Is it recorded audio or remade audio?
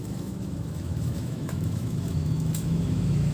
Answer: remade